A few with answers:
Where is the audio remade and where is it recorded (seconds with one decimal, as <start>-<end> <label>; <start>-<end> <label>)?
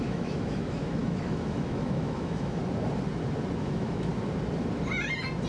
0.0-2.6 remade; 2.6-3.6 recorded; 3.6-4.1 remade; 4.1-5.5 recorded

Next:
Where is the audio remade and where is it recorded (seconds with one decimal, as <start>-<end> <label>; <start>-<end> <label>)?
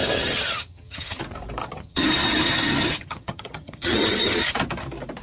0.0-1.2 remade; 1.2-1.6 recorded; 1.6-4.5 remade; 4.5-5.2 recorded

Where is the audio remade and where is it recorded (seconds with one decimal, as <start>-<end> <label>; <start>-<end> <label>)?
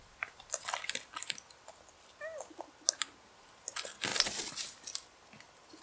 0.0-5.8 recorded